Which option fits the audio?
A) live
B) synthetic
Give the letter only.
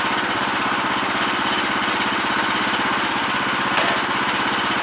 A